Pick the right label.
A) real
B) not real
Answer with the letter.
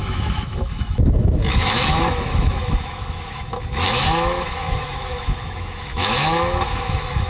B